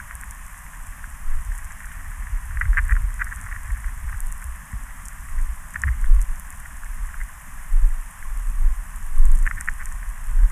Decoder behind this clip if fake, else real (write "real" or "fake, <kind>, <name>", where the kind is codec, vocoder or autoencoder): real